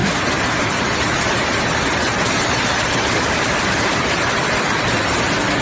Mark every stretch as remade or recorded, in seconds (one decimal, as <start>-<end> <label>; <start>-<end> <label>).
0.0-5.6 recorded